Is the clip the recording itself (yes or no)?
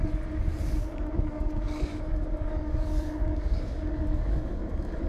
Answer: no